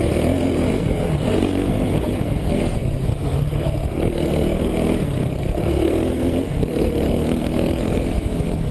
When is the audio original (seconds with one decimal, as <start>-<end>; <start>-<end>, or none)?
none